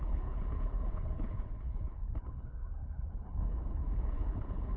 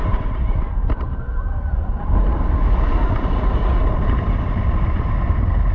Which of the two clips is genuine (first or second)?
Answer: second